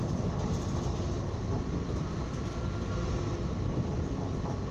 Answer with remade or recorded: recorded